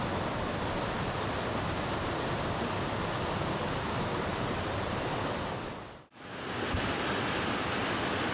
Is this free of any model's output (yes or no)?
yes